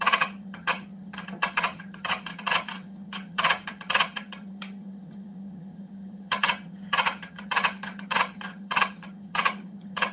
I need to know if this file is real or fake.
fake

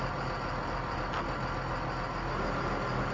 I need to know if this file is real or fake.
real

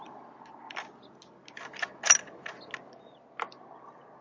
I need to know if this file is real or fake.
real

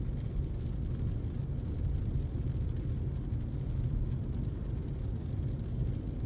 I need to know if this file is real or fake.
real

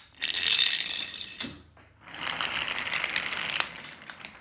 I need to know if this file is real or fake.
real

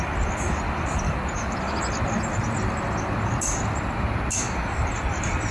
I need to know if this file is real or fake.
real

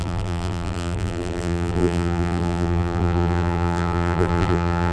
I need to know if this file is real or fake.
fake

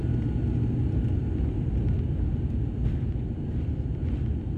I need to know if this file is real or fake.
real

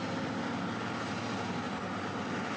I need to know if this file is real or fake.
real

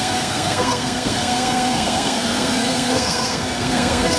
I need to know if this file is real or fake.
fake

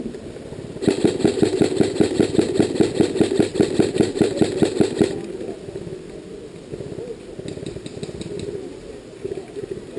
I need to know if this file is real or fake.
real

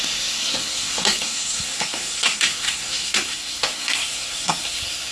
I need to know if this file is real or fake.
fake